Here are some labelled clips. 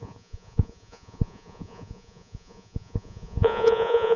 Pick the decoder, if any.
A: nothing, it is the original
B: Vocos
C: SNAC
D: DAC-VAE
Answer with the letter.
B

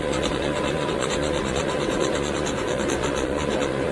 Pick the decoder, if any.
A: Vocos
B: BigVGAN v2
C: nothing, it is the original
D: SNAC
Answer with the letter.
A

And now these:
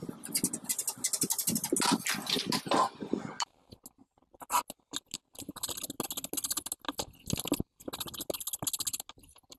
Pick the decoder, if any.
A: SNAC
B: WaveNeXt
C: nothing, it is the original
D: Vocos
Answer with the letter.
C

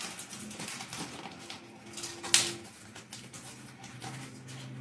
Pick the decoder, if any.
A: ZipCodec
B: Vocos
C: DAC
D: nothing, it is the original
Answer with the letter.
D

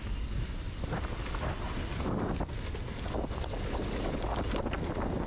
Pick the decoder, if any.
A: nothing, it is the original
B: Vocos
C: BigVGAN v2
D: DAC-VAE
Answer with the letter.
A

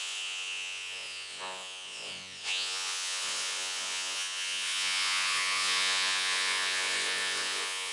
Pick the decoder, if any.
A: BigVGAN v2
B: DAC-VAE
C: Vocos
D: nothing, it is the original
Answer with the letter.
C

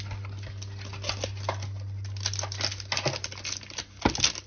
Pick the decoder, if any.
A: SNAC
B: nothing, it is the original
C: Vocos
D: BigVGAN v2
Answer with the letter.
B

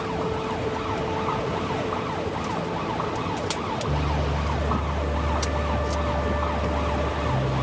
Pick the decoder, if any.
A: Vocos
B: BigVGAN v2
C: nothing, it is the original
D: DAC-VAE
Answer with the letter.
C